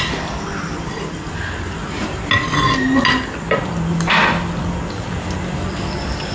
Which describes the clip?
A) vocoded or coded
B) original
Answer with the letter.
B